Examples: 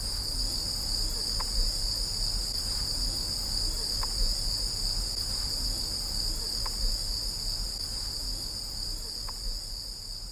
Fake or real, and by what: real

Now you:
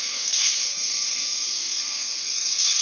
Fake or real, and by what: fake, codec, SNAC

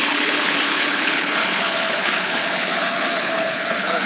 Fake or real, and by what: fake, codec, HILCodec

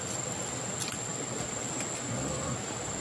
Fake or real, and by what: real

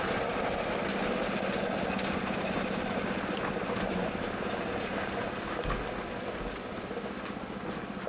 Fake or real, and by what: real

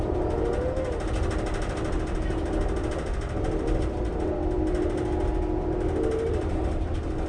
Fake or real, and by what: real